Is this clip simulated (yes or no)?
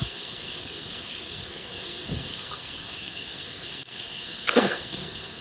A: yes